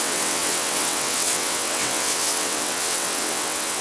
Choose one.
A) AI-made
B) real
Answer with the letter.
A